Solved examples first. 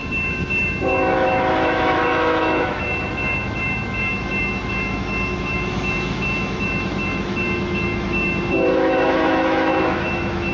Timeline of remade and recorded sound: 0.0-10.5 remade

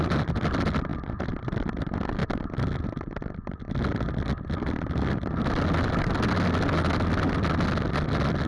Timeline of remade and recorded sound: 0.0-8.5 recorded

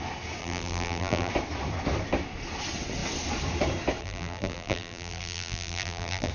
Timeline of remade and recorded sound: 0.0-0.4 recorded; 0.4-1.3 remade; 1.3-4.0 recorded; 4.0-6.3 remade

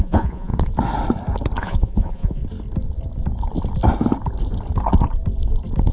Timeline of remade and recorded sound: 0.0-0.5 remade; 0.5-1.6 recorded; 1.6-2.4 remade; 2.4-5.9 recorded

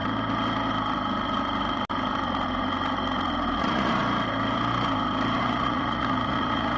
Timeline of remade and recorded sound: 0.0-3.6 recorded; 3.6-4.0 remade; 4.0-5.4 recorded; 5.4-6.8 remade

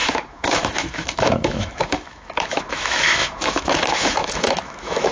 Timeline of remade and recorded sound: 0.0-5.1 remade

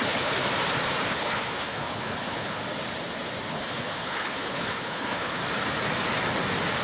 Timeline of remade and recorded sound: 0.0-0.4 remade; 0.4-1.1 recorded; 1.1-2.6 remade; 2.6-3.5 recorded; 3.5-5.4 remade; 5.4-6.8 recorded